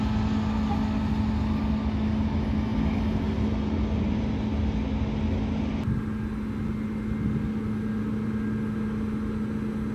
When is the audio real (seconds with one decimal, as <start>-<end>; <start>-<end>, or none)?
0.0-9.9